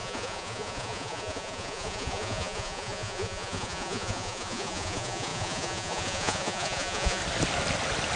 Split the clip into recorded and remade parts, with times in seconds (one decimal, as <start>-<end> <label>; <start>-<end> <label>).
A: 0.0-7.2 remade; 7.2-8.2 recorded